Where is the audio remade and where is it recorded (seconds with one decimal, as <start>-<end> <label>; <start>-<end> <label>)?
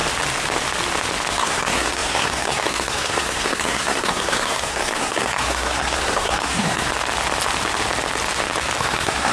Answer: 0.0-1.3 recorded; 1.3-6.9 remade; 6.9-8.8 recorded; 8.8-9.3 remade